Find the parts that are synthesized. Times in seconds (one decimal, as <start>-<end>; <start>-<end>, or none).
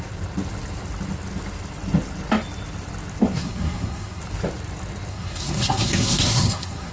3.4-4.2; 5.1-6.9